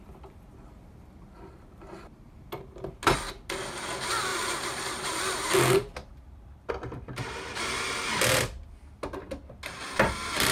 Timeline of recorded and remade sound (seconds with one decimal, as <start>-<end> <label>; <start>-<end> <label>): 0.0-4.3 recorded; 4.3-6.7 remade; 6.7-10.5 recorded